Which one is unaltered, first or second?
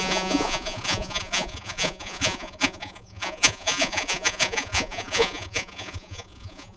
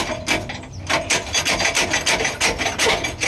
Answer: second